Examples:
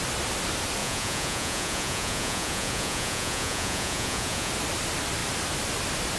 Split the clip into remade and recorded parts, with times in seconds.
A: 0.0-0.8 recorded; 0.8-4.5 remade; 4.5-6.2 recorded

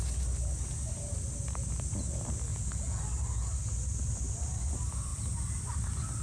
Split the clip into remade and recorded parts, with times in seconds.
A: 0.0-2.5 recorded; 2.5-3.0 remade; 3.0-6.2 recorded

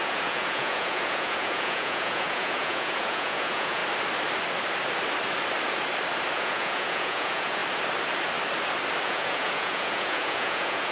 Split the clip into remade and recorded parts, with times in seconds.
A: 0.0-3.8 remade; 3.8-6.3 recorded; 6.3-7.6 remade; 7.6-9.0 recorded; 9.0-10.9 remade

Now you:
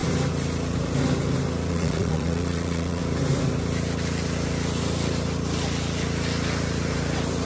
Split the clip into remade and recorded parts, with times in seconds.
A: 0.0-1.7 recorded; 1.7-3.0 remade; 3.0-7.5 recorded

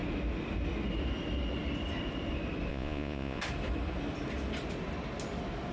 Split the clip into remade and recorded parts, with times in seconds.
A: 0.0-2.7 recorded; 2.7-3.4 remade; 3.4-5.7 recorded